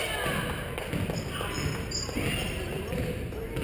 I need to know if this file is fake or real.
real